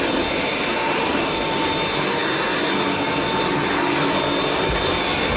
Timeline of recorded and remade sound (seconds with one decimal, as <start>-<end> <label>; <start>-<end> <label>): 0.0-5.4 recorded

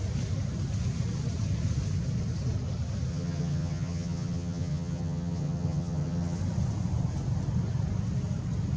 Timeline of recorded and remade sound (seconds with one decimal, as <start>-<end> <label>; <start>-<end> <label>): 0.0-3.1 recorded; 3.1-6.4 remade; 6.4-8.8 recorded

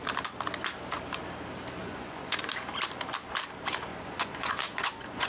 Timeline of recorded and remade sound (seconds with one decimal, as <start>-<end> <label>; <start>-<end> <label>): 0.0-1.8 recorded; 1.8-2.5 remade; 2.5-3.9 recorded; 3.9-5.3 remade

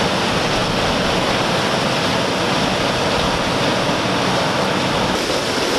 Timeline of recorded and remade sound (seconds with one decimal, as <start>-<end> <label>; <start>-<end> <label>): 0.0-5.8 recorded

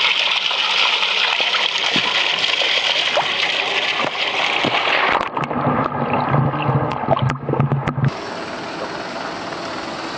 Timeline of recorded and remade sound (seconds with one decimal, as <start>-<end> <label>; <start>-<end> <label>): 0.0-10.2 recorded

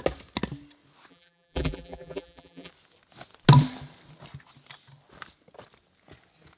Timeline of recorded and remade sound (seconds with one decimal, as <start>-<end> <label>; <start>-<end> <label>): 0.0-1.1 recorded; 1.1-2.7 remade; 2.7-6.6 recorded

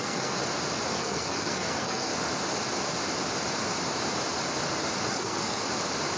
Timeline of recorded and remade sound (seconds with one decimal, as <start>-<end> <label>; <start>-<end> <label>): 0.0-0.4 remade; 0.4-0.9 recorded; 0.9-2.1 remade; 2.1-5.1 recorded; 5.1-5.6 remade; 5.6-6.2 recorded

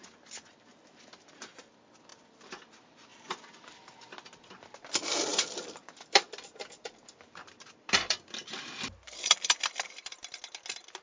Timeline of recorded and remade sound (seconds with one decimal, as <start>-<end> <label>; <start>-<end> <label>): 0.0-2.1 recorded; 2.1-2.7 remade; 2.7-3.1 recorded; 3.1-4.1 remade; 4.1-5.3 recorded; 5.3-10.4 remade; 10.4-11.0 recorded